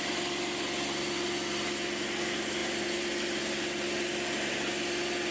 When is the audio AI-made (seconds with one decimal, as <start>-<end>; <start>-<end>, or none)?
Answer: none